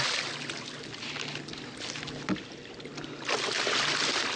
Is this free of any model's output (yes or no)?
yes